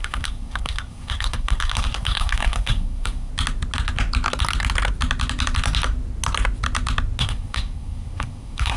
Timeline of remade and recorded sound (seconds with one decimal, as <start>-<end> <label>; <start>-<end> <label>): 0.0-3.3 remade; 3.3-7.2 recorded; 7.2-8.8 remade